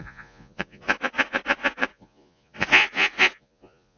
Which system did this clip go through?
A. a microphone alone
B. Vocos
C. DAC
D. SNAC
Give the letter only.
B